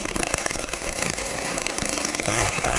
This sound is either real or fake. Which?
fake